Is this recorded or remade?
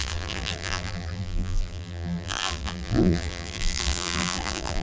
remade